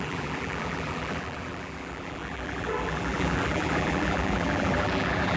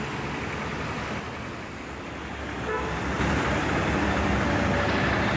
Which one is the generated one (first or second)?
first